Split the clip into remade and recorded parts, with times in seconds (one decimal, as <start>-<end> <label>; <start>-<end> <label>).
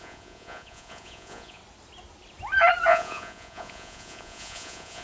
0.0-1.6 remade; 1.6-2.9 recorded; 2.9-5.0 remade